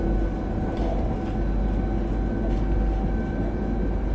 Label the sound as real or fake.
real